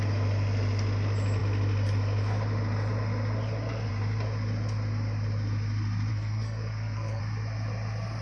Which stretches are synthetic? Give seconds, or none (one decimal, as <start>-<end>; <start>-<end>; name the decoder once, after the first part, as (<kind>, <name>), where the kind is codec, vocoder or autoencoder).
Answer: 6.1-7.2 (codec, SNAC)